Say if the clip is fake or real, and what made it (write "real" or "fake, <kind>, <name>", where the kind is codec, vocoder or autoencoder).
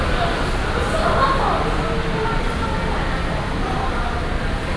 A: real